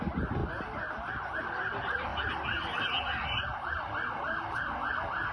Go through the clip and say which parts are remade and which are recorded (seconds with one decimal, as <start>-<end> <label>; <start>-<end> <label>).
0.0-0.4 recorded; 0.4-1.4 remade; 1.4-2.1 recorded; 2.1-5.3 remade